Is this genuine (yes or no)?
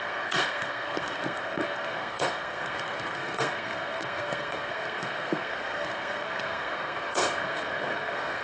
no